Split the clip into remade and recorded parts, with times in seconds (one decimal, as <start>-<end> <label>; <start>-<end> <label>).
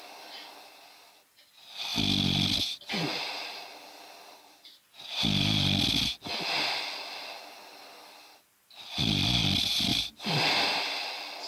0.0-1.9 recorded; 1.9-2.4 remade; 2.4-3.1 recorded; 3.1-3.9 remade; 3.9-9.9 recorded; 9.9-10.9 remade; 10.9-11.5 recorded